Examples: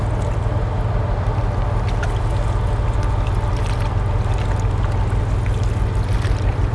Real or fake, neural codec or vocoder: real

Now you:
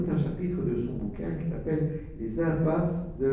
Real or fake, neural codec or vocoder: real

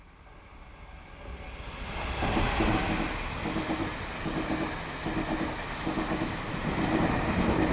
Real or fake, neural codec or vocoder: real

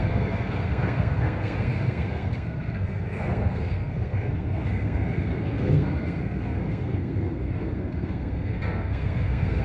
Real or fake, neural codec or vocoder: fake, codec, SNAC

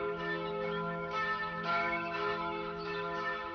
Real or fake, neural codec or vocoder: fake, autoencoder, DAC-VAE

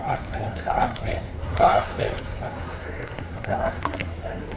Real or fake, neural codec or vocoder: fake, codec, SNAC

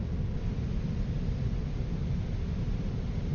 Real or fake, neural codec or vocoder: real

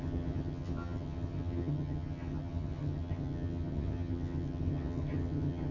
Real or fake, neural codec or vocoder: fake, vocoder, HiFi-GAN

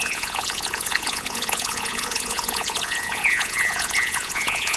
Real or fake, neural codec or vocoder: fake, vocoder, Vocos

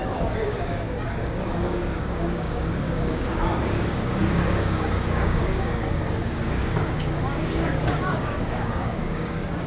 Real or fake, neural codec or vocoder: fake, codec, DAC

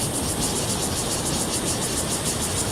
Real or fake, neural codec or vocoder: real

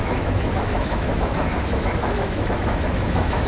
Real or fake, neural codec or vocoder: fake, autoencoder, DAC-VAE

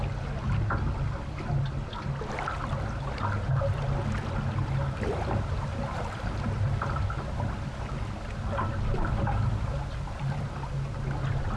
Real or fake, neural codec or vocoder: real